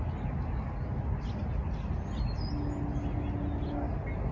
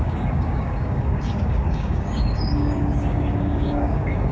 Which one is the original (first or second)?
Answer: first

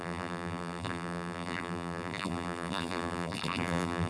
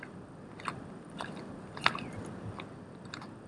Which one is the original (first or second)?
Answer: second